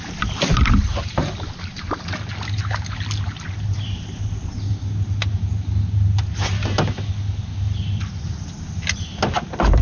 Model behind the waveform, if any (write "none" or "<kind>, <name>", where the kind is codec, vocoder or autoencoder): none